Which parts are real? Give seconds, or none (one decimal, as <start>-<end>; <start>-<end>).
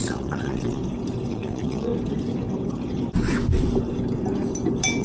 0.8-1.3; 1.9-5.0